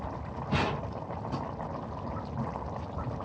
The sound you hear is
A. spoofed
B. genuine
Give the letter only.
B